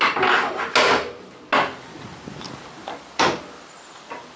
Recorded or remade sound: recorded